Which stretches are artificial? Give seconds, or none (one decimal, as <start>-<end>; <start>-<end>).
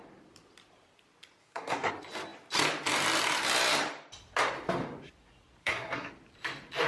1.4-1.9; 5.6-6.1